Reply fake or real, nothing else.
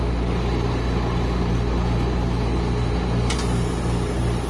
real